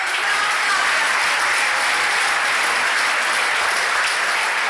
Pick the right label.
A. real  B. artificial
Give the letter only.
A